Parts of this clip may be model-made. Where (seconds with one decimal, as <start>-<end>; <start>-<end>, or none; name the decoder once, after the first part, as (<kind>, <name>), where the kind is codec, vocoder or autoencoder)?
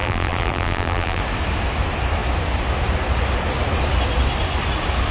0.0-1.2 (vocoder, BigVGAN v2)